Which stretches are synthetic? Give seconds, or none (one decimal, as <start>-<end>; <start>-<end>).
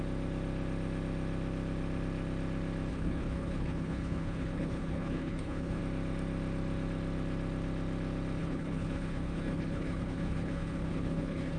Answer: 2.9-5.8; 8.4-11.6